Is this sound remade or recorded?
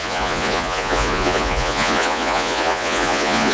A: remade